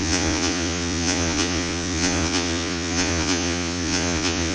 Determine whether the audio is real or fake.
fake